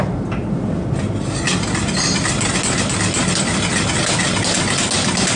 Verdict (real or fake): real